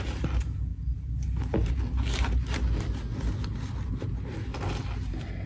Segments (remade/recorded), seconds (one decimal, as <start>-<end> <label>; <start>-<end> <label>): 0.0-5.5 recorded